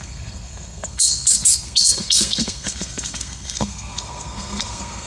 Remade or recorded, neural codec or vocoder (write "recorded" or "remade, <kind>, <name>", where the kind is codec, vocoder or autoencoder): remade, codec, SNAC